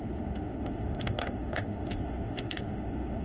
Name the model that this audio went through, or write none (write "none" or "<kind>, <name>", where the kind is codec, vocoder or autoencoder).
autoencoder, DAC-VAE